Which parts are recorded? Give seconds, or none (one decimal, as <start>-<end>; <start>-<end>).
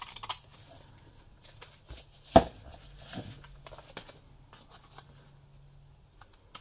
0.0-6.6